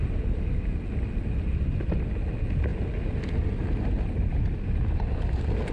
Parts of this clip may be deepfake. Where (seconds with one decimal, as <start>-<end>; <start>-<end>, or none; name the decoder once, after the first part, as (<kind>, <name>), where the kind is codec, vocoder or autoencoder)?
none